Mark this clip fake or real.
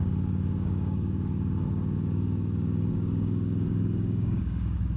fake